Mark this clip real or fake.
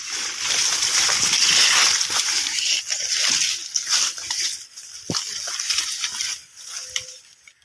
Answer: real